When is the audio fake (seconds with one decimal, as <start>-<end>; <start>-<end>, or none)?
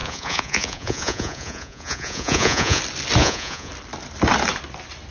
0.0-2.8; 3.2-3.7